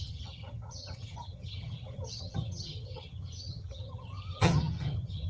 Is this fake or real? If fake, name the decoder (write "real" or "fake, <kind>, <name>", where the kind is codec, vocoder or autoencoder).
fake, vocoder, HiFi-GAN